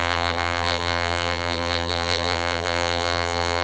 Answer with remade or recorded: remade